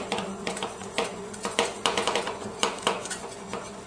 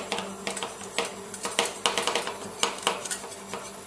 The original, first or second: second